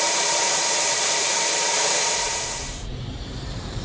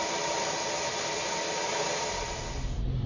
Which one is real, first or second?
second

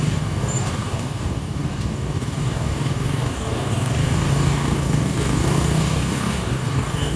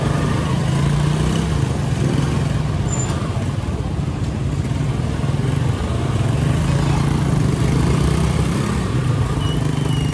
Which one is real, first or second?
second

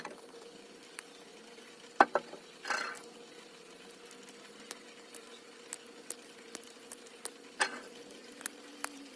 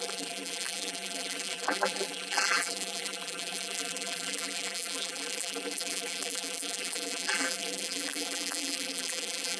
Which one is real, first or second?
first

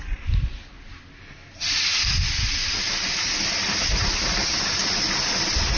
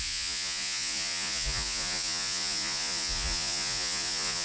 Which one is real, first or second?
first